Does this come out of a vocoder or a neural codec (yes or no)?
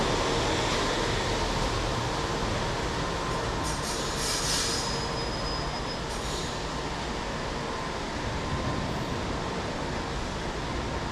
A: no